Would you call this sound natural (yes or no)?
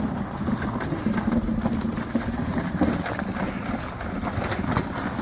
yes